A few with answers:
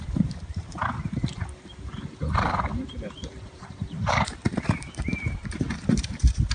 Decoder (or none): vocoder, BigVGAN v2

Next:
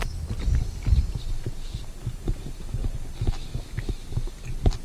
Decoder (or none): none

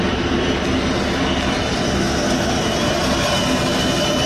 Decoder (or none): none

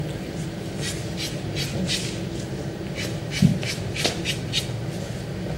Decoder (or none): none